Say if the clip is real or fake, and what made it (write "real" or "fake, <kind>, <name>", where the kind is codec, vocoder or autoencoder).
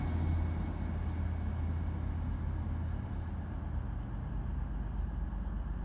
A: real